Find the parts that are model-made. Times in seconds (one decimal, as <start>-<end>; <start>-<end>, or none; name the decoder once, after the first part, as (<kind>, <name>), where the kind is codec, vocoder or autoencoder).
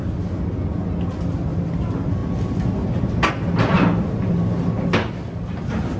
none